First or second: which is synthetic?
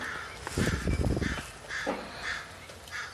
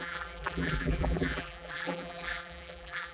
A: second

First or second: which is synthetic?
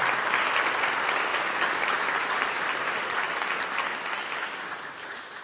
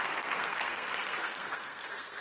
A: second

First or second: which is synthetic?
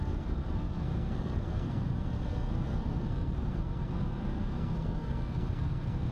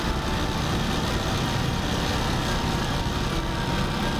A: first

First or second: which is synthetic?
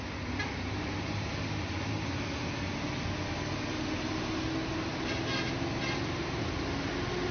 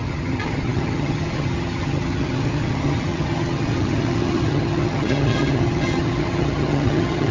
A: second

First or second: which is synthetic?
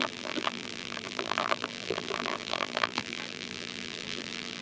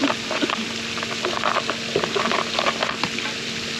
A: first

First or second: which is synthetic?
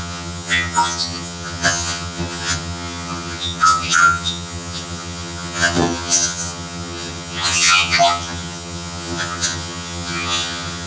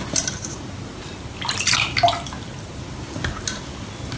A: first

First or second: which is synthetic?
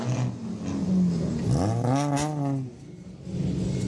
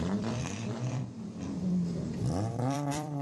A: second